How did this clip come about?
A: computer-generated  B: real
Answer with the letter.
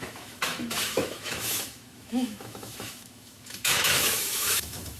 A